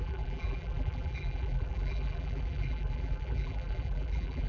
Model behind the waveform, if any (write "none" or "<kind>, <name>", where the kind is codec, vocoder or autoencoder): vocoder, BigVGAN v2